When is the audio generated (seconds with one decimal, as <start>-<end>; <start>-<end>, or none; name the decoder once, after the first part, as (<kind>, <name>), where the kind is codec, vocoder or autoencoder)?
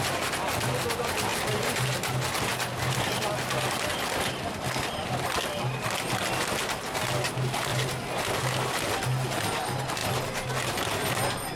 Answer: none